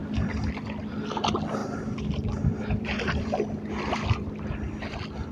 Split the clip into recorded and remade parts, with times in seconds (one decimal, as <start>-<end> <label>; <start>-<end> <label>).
0.0-0.9 remade; 0.9-1.6 recorded; 1.6-4.8 remade; 4.8-5.3 recorded